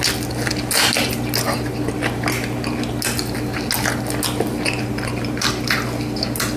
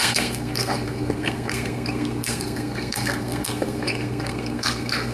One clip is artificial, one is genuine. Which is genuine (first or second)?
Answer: first